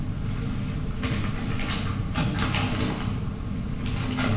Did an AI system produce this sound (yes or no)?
no